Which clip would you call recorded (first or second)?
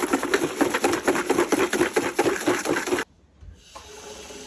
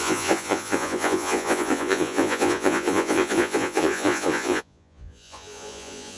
first